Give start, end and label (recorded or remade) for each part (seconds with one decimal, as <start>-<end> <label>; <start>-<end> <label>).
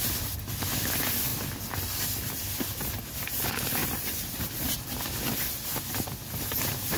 0.0-1.3 recorded; 1.3-2.3 remade; 2.3-7.0 recorded